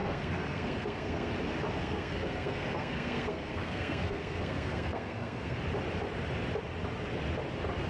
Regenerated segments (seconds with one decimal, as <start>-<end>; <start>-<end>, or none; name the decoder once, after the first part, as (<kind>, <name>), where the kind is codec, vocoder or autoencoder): 0.0-1.3 (codec, SNAC); 1.8-5.6

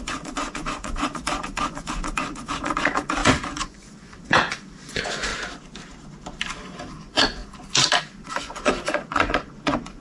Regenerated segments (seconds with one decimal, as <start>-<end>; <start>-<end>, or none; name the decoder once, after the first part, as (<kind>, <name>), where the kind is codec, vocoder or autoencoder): 0.0-5.3 (vocoder, Vocos); 7.0-7.4; 8.0-10.0

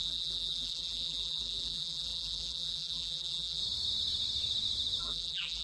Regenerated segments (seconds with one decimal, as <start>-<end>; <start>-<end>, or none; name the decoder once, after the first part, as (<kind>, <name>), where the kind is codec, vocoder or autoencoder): 0.0-3.6 (vocoder, BigVGAN v2); 5.0-5.6

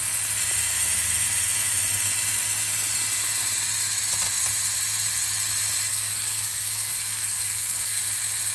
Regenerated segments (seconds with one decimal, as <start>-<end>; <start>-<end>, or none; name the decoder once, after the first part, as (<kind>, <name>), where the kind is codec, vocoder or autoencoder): 5.9-8.0 (codec, SNAC)

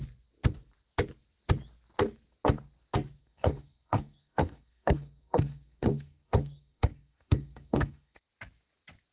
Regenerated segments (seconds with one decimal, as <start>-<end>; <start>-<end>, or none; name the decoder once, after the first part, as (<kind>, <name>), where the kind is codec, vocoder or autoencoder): 3.2-8.3 (codec, SNAC)

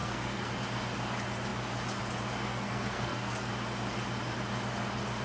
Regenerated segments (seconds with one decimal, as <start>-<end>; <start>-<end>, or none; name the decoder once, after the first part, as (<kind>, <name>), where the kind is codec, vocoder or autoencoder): 0.0-0.5 (codec, SNAC); 2.5-3.5

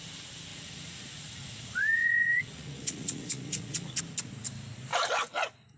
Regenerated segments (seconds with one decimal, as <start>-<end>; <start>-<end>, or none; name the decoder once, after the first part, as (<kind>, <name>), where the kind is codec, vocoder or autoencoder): 0.5-4.0 (vocoder, Vocos)